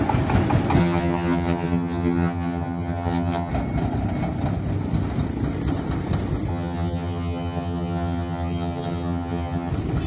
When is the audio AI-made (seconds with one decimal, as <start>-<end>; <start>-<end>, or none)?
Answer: 0.8-3.5; 6.5-9.7